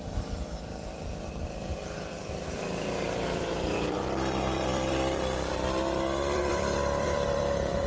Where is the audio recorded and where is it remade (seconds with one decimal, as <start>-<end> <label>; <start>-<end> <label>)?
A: 0.0-7.9 remade